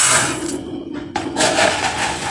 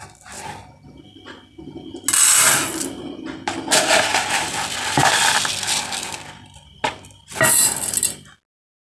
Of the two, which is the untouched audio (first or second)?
second